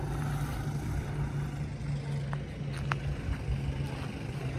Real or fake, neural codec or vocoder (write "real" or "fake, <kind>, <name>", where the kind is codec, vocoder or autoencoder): real